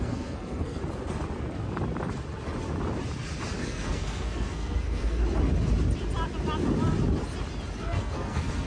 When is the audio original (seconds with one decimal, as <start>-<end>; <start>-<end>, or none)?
0.8-3.6; 5.2-7.8